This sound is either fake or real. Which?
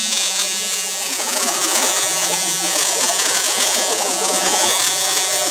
fake